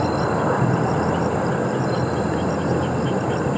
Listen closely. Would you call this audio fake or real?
real